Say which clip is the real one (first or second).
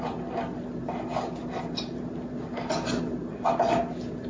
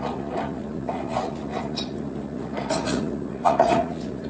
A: first